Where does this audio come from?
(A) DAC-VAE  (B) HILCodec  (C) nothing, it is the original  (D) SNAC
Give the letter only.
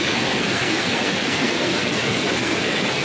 D